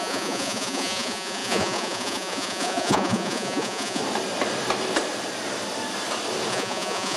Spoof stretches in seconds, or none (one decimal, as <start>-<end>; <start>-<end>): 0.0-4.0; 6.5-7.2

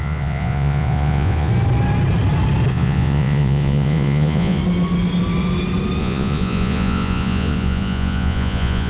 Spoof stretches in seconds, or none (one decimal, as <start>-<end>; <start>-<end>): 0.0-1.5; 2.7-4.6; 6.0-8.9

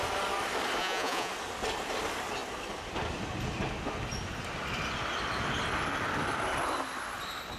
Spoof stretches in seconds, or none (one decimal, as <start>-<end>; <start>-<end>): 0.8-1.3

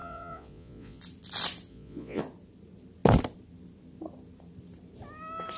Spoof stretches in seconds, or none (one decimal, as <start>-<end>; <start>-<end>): 0.0-1.0; 1.7-2.2

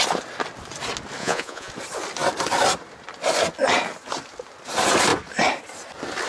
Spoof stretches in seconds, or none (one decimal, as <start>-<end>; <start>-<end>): 1.2-1.7